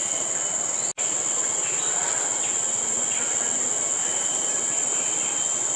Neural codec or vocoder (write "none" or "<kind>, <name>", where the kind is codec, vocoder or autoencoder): none